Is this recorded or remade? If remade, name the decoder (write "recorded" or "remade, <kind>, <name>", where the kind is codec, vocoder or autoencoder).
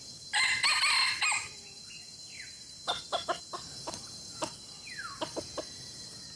recorded